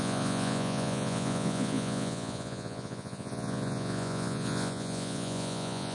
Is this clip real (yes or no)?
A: no